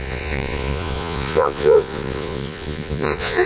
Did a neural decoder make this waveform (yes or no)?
yes